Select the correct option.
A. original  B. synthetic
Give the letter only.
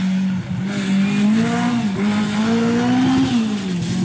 A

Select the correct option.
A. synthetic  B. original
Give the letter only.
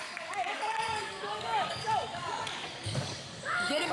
A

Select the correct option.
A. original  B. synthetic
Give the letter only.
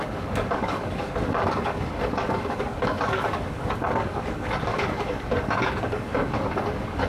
B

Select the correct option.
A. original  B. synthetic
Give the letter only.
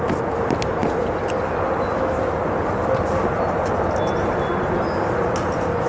A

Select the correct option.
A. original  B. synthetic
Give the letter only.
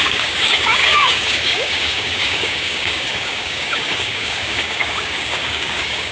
B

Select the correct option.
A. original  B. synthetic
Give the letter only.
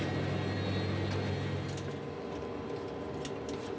A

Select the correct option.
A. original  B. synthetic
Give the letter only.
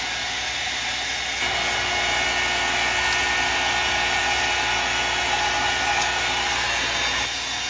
A